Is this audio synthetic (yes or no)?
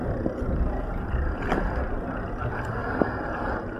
no